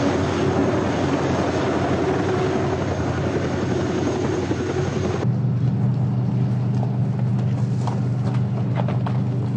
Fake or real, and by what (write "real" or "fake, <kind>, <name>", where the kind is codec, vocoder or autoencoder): real